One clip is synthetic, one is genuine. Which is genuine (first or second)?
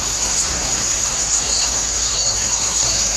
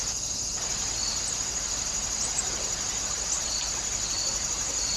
second